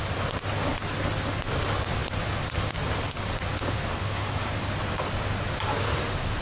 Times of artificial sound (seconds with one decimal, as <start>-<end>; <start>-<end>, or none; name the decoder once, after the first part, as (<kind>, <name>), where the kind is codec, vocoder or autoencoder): 3.9-4.5 (codec, SNAC)